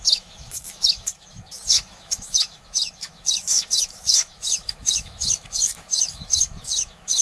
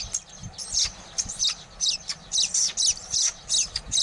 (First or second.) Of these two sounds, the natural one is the second